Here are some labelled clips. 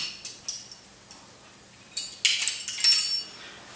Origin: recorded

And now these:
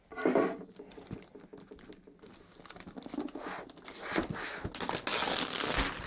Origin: recorded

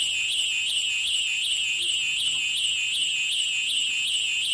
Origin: recorded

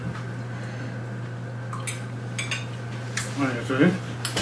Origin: recorded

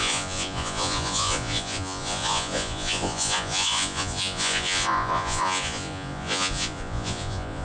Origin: remade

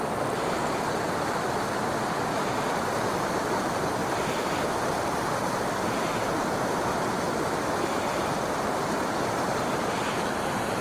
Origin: recorded